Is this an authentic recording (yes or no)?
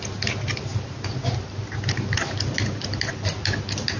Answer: yes